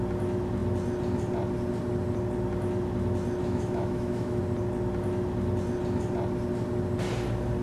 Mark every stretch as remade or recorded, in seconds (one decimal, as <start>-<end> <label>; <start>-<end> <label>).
0.0-3.4 recorded; 3.4-4.4 remade; 4.4-7.6 recorded